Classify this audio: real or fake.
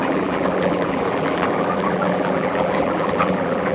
fake